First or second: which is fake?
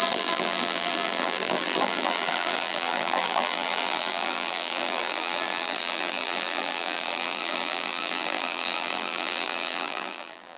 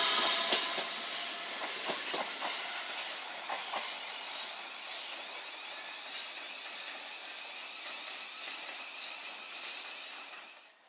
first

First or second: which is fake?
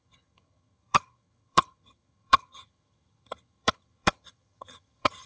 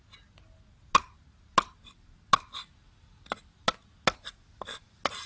first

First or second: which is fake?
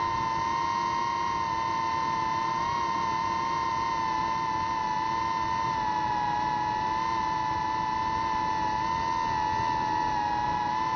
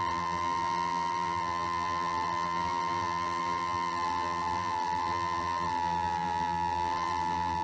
second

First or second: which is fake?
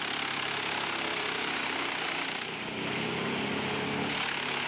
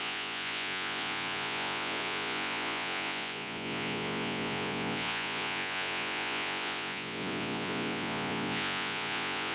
second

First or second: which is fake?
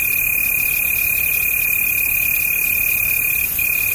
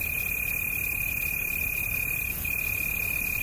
first